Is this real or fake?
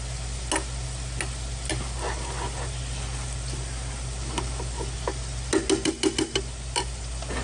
real